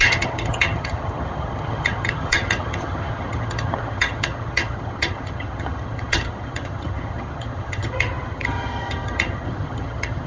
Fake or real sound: fake